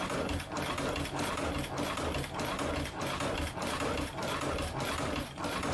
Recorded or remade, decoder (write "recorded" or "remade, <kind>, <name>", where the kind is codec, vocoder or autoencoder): recorded